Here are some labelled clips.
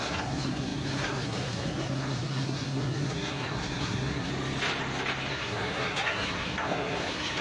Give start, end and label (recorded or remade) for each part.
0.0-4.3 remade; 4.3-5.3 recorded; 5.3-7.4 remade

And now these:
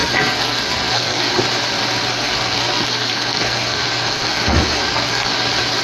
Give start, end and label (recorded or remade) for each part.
0.0-1.3 remade; 1.3-2.1 recorded; 2.1-5.3 remade; 5.3-5.8 recorded

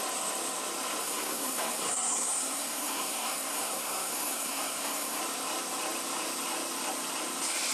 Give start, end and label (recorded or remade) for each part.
0.0-1.0 recorded; 1.0-5.2 remade; 5.2-7.7 recorded

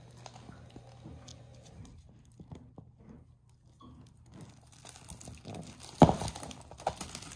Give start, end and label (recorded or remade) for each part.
0.0-7.4 recorded

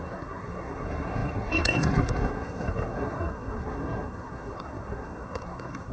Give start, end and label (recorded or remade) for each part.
0.0-5.9 remade

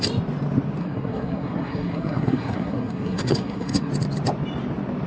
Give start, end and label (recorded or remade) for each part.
0.0-0.8 recorded; 0.8-3.9 remade; 3.9-5.1 recorded

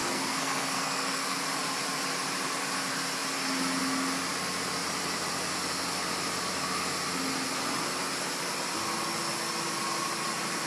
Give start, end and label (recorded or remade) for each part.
0.0-1.4 remade; 1.4-10.7 recorded

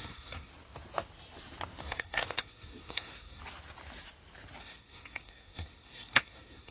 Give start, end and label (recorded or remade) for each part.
0.0-0.5 remade; 0.5-1.8 recorded; 1.8-3.4 remade; 3.4-4.6 recorded; 4.6-6.7 remade